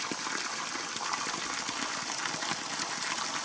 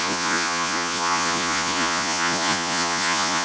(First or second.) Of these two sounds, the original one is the first